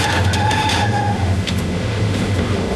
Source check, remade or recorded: remade